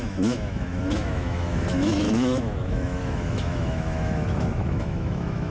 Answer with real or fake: fake